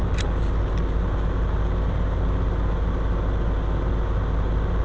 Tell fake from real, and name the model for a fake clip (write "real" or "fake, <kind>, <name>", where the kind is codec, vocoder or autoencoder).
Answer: real